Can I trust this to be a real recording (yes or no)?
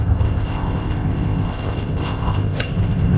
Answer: no